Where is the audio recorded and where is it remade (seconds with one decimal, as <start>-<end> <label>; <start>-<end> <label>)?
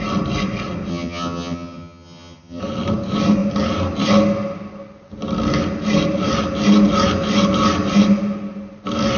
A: 0.0-0.9 recorded; 0.9-2.6 remade; 2.6-9.2 recorded